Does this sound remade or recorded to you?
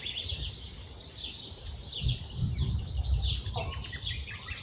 recorded